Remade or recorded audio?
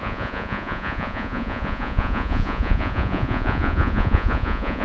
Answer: remade